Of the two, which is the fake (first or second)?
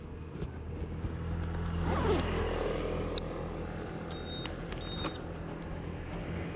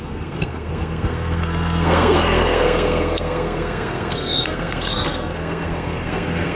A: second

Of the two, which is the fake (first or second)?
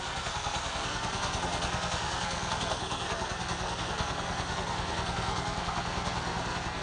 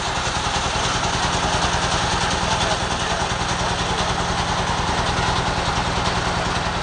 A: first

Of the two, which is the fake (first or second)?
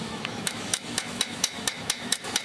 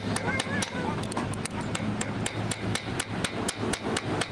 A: first